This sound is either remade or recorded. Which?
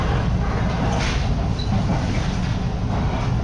recorded